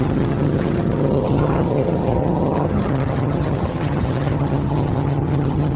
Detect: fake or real fake